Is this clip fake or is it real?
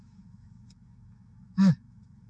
fake